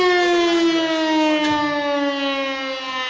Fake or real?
real